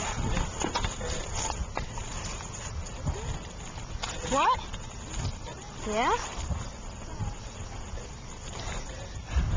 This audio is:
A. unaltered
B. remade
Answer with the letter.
A